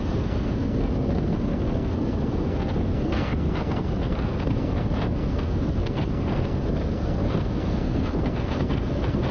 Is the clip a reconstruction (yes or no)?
yes